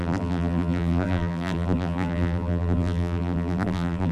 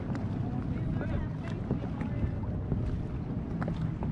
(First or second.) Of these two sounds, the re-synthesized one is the first